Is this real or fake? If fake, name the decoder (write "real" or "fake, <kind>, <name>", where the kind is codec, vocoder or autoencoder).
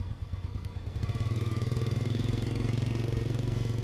fake, codec, SNAC